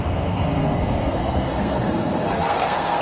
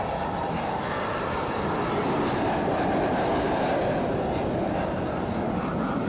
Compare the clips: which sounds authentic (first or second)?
second